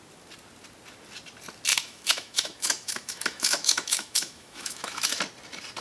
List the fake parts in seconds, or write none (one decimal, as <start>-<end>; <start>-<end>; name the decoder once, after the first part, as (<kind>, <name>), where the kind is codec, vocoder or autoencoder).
1.7-5.2 (autoencoder, DAC-VAE)